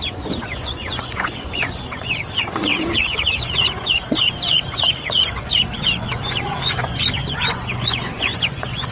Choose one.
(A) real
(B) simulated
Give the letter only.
B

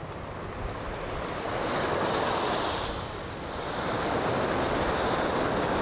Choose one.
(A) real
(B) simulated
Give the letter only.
A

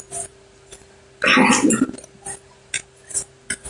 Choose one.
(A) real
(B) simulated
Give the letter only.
A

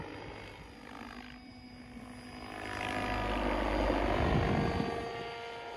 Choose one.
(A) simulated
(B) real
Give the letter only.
B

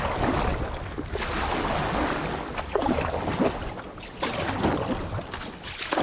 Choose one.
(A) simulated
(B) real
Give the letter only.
B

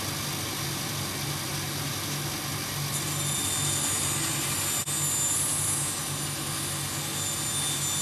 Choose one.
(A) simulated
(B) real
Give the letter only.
B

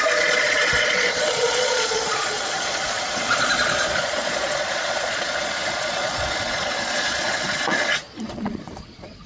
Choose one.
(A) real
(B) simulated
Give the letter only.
B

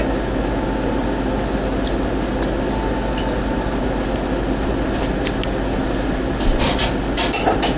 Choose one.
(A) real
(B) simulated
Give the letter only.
A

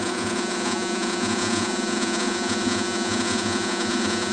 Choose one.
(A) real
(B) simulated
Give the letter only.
B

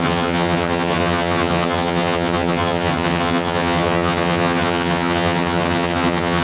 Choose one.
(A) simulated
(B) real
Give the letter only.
A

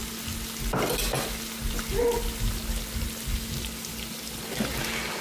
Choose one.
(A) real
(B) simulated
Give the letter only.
A